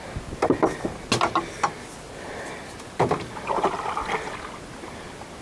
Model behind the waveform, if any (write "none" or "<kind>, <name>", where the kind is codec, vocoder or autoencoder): none